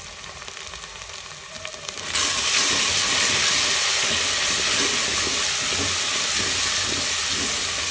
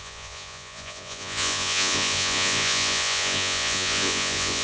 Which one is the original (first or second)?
first